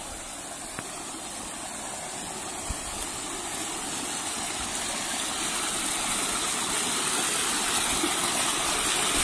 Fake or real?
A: real